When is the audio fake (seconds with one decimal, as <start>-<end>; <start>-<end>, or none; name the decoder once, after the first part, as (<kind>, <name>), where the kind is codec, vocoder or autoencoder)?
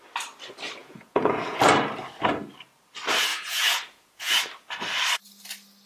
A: 0.8-1.6 (vocoder, Vocos); 3.3-4.4